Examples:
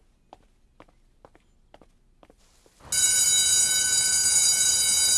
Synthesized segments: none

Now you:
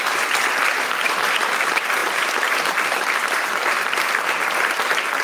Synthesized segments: 0.0-5.2 (vocoder, BigVGAN v2)

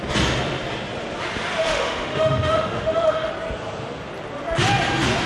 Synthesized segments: 1.6-3.3 (autoencoder, DAC-VAE)

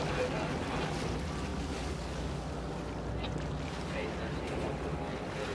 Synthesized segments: 1.5-2.7 (codec, DAC)

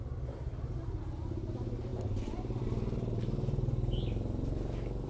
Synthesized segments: none

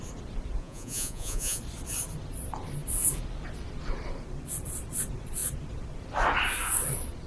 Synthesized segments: 0.6-1.6 (vocoder, Vocos)

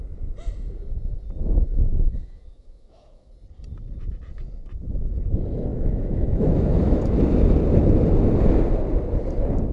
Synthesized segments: 1.9-3.3 (autoencoder, DAC-VAE); 5.7-7.0

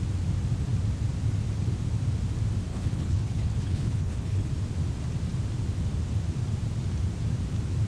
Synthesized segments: 2.7-4.5 (codec, HILCodec)